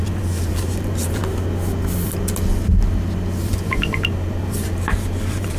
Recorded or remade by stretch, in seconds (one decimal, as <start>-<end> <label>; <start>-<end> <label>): 0.0-1.2 remade; 1.2-3.4 recorded; 3.4-5.6 remade